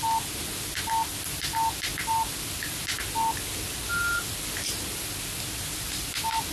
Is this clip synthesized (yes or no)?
no